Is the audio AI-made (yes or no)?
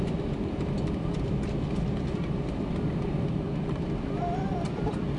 yes